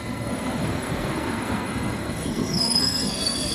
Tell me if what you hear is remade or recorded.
remade